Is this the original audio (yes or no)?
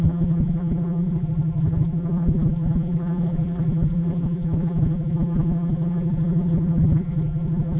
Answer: no